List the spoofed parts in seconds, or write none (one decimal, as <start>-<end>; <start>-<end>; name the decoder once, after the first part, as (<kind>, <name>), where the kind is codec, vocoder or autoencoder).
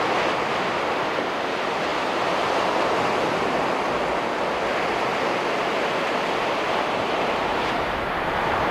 1.9-3.5 (vocoder, BigVGAN v2); 7.5-8.7